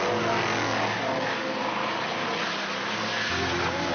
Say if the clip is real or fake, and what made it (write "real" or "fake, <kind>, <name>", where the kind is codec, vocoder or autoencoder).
real